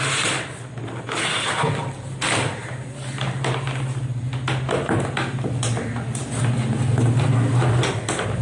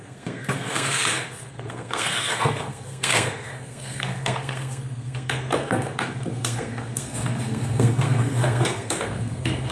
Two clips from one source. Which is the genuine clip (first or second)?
first